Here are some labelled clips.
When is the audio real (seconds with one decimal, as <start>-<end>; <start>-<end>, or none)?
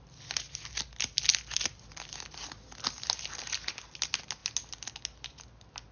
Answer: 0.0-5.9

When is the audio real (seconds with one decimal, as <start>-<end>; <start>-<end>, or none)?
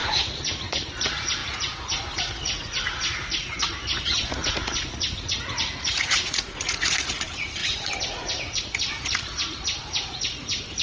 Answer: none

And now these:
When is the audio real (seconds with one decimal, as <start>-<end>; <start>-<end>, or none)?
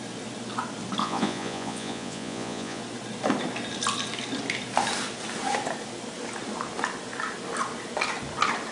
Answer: 0.0-1.0; 2.8-8.7